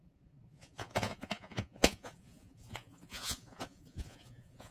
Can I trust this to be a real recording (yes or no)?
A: no